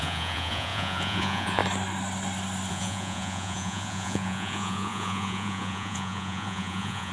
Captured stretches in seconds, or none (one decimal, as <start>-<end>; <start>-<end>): 1.6-2.7